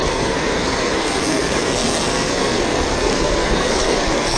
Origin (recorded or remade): remade